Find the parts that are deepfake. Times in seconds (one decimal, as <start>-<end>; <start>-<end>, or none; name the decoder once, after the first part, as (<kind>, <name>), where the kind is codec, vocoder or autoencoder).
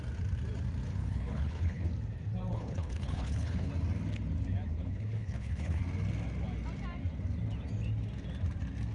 0.9-1.9 (codec, HILCodec); 2.5-3.7; 4.8-5.8